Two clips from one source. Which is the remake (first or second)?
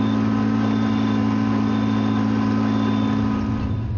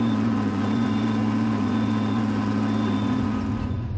second